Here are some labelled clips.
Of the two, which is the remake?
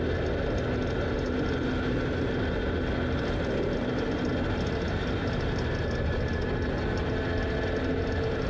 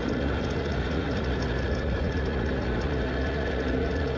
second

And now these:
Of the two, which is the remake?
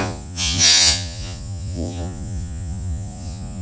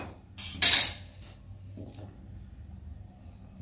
first